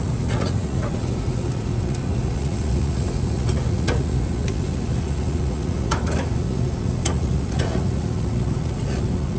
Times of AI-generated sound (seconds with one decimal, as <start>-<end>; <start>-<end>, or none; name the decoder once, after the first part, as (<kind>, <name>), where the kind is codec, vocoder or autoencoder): 0.0-9.4 (vocoder, Vocos)